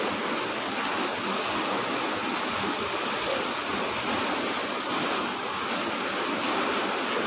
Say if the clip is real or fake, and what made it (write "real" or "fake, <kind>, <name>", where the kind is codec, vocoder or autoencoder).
real